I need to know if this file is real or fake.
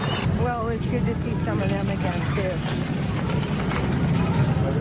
real